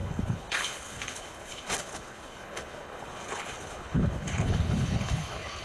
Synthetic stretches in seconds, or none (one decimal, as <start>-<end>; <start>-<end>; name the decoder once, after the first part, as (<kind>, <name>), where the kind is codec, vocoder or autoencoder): 0.0-5.6 (codec, HILCodec)